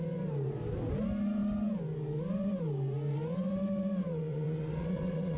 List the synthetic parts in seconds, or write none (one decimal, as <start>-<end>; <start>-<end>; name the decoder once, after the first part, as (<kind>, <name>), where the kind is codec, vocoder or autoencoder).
4.0-5.4 (vocoder, WaveNeXt)